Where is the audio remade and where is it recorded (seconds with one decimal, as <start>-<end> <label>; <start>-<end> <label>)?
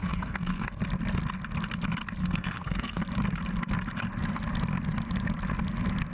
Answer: 0.0-0.8 remade; 0.8-2.2 recorded; 2.2-3.0 remade; 3.0-6.1 recorded